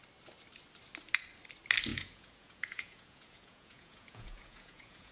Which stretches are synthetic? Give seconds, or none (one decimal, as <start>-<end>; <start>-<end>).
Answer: 1.9-5.1